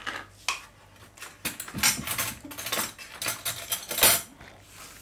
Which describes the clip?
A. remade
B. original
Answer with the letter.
B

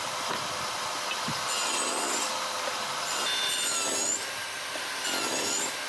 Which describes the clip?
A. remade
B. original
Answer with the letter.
A